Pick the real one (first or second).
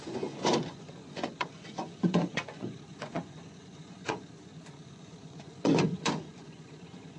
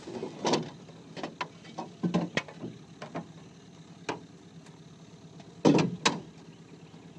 second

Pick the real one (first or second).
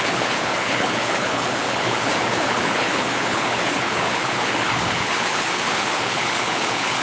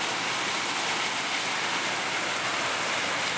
second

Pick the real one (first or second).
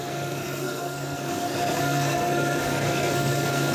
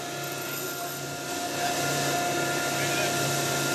second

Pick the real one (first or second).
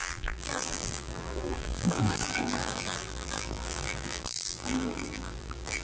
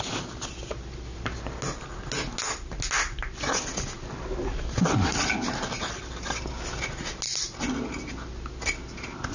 second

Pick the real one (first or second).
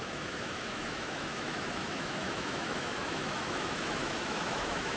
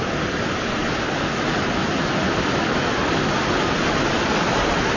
second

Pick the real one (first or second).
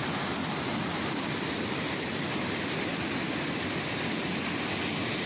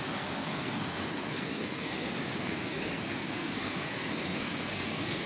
first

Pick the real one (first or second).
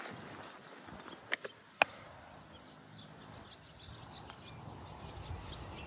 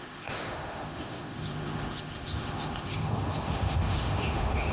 first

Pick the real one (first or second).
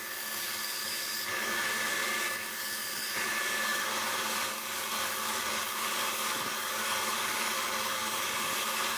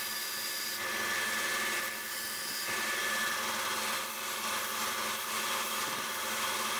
second